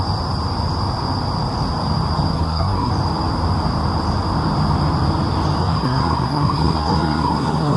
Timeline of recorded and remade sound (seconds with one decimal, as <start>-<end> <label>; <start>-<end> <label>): 0.0-2.3 recorded; 2.3-2.9 remade; 2.9-5.6 recorded; 5.6-7.8 remade